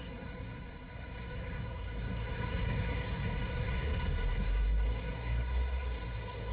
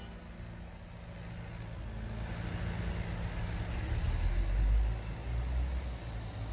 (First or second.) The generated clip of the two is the first